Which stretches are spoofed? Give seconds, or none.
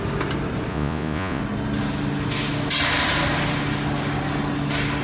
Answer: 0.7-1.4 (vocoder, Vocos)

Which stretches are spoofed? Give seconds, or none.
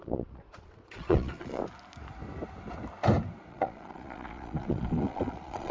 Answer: 0.0-1.6 (vocoder, Vocos); 3.5-5.7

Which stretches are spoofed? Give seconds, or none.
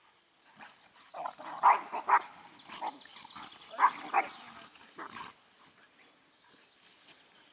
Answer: none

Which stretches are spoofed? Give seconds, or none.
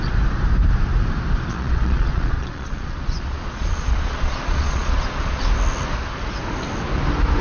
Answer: 1.5-5.4 (vocoder, Vocos)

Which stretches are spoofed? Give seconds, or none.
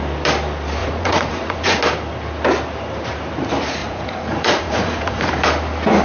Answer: 0.8-1.8 (vocoder, Vocos); 3.8-5.3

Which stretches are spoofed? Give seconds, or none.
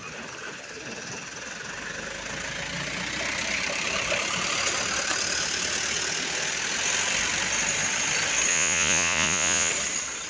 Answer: 8.5-9.7 (vocoder, Vocos)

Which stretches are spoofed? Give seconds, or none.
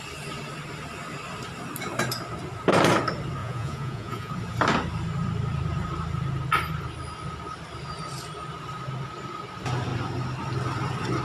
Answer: 3.4-4.3 (vocoder, Vocos)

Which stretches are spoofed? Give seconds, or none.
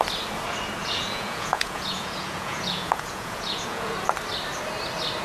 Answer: 0.8-3.9 (vocoder, Vocos)